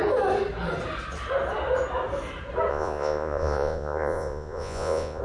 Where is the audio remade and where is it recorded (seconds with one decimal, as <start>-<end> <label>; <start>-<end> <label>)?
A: 0.0-2.7 recorded; 2.7-5.2 remade